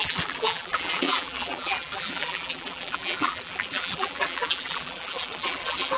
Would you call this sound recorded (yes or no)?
no